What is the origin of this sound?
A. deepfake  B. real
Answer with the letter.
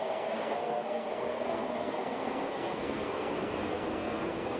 A